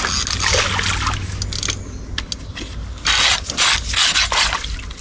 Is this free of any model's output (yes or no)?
yes